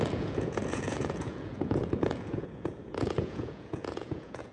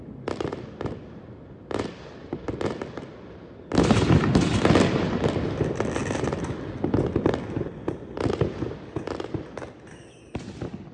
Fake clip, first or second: first